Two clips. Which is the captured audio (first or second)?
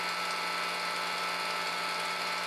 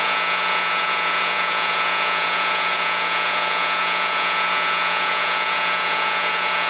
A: first